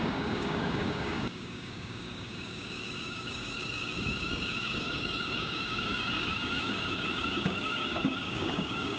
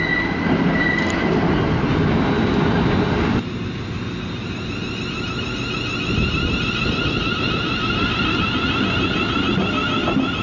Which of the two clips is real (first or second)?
second